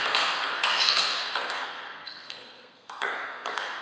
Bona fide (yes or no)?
no